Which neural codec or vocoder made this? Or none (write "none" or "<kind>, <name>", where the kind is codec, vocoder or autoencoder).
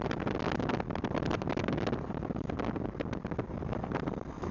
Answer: none